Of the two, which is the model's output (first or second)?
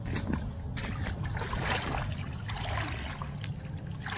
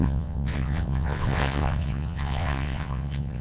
second